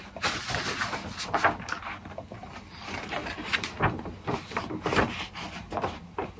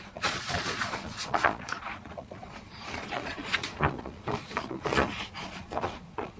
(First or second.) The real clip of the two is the first